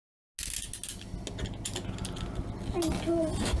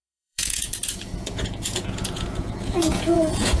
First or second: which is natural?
first